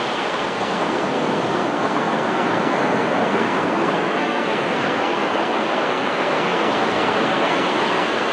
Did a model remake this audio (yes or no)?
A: yes